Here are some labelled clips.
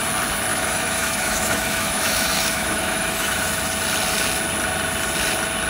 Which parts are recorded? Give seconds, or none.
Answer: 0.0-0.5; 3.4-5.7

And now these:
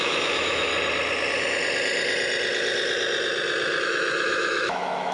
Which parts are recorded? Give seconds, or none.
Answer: 0.7-3.8

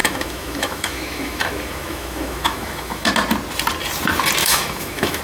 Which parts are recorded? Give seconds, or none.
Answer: 3.1-4.4